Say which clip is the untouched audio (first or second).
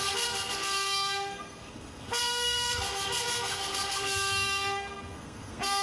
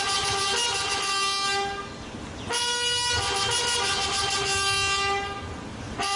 second